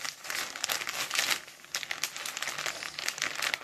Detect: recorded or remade recorded